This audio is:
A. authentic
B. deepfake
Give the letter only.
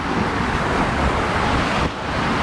A